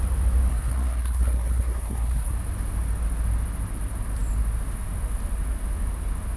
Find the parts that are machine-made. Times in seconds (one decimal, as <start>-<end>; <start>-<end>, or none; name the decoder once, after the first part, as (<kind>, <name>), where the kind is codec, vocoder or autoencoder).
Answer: 0.5-2.3 (codec, SNAC)